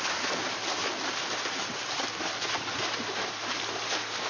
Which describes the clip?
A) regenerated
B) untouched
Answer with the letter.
B